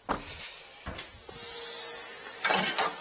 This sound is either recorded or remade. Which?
recorded